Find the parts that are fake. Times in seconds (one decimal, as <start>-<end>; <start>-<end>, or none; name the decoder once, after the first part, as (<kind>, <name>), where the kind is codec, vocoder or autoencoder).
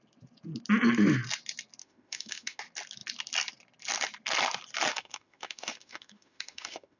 1.8-2.6 (autoencoder, DAC-VAE); 4.9-7.0